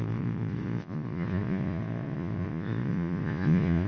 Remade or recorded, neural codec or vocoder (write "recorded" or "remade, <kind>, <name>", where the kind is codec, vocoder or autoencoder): remade, vocoder, Vocos